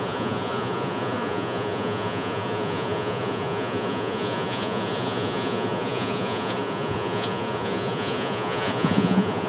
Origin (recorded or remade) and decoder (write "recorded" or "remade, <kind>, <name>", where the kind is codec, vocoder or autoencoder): remade, vocoder, Vocos